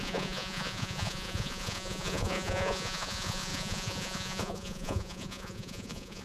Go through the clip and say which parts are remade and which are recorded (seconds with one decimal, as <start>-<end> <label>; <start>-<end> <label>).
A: 0.0-6.2 remade

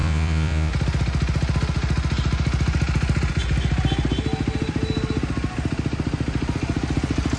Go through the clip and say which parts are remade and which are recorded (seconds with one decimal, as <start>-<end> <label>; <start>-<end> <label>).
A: 0.0-0.7 remade; 0.7-7.4 recorded

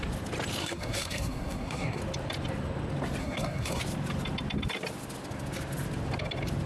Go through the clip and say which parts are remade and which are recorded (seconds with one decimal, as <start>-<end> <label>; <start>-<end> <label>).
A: 0.0-0.6 recorded; 0.6-2.0 remade; 2.0-3.2 recorded; 3.2-3.8 remade; 3.8-6.7 recorded

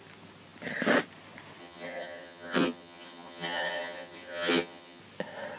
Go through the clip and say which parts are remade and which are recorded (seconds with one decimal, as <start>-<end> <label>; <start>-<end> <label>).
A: 0.0-1.6 recorded; 1.6-5.0 remade; 5.0-5.6 recorded

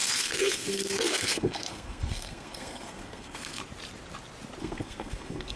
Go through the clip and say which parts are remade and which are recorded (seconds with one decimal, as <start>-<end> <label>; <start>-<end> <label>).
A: 0.0-3.6 remade; 3.6-4.6 recorded; 4.6-5.6 remade

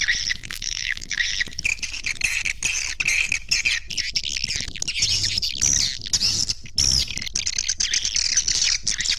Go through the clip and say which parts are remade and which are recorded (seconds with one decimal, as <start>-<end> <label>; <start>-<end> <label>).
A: 0.0-0.4 recorded; 0.4-1.2 remade; 1.2-9.2 recorded

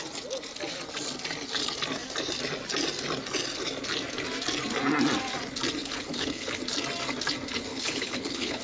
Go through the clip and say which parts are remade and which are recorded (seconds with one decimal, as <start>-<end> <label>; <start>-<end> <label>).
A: 0.0-5.8 recorded; 5.8-6.6 remade; 6.6-7.7 recorded; 7.7-8.6 remade

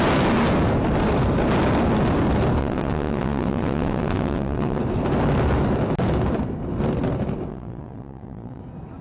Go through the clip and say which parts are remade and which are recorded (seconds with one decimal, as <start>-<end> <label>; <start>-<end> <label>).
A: 0.0-2.6 recorded; 2.6-4.8 remade; 4.8-7.5 recorded; 7.5-8.6 remade; 8.6-9.0 recorded